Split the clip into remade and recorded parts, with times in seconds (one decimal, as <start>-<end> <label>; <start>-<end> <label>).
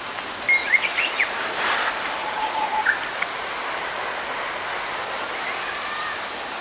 0.0-0.6 recorded; 0.6-1.3 remade; 1.3-2.2 recorded; 2.2-2.9 remade; 2.9-6.6 recorded